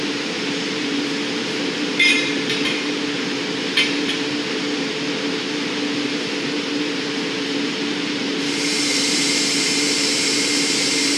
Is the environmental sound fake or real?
fake